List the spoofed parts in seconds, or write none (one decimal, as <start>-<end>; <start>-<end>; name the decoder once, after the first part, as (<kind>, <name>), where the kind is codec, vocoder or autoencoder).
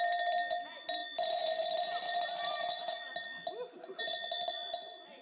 none